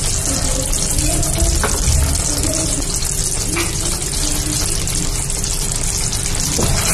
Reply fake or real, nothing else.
real